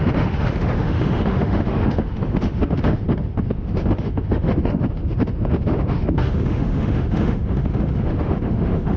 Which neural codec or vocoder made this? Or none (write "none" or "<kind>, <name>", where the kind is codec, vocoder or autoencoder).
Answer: autoencoder, DAC-VAE